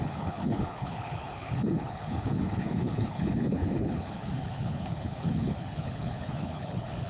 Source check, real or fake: fake